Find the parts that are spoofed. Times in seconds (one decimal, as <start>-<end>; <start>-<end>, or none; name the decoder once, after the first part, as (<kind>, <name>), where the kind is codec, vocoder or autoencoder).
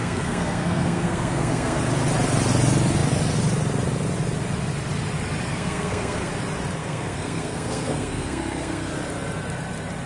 0.0-1.8 (codec, SNAC); 5.5-6.3; 6.8-8.9